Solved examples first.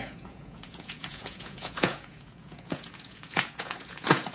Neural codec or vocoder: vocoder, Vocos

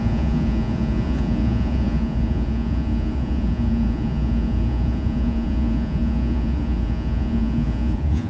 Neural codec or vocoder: vocoder, Vocos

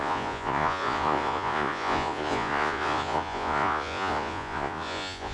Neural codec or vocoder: vocoder, Vocos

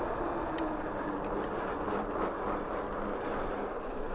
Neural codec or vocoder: none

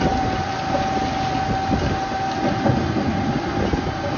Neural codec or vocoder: none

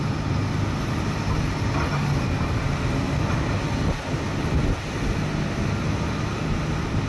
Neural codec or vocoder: none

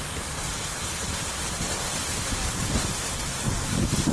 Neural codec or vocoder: none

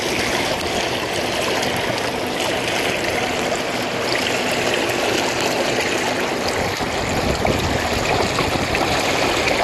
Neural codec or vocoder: none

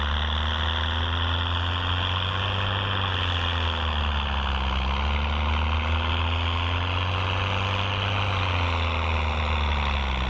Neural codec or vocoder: none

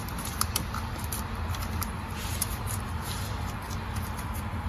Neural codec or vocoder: none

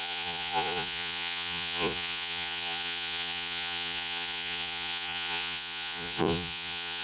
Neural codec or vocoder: vocoder, Vocos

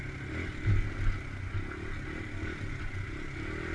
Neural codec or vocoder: none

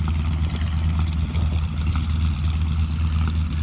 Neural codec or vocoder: none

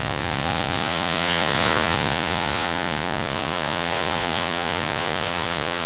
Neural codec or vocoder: vocoder, Vocos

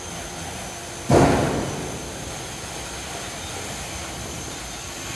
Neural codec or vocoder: none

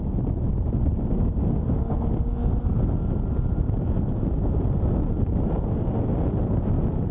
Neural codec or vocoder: none